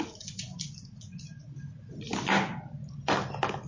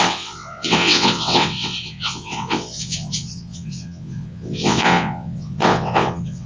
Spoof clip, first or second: second